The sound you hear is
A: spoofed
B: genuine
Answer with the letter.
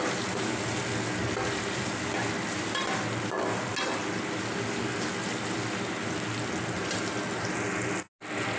B